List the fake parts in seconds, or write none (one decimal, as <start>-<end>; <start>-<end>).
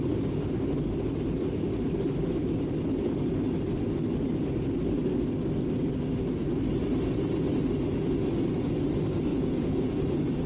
9.3-9.9